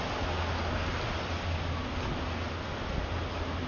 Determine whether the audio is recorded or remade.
recorded